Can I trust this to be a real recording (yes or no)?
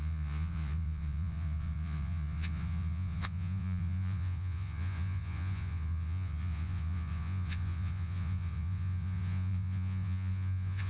no